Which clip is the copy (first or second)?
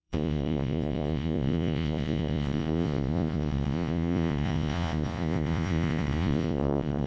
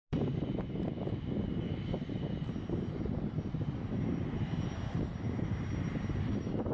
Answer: first